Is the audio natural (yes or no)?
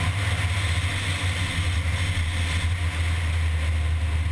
yes